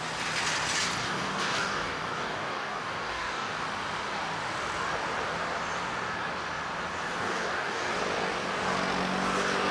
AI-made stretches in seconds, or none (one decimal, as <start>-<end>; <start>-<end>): 1.0-3.5; 7.2-7.9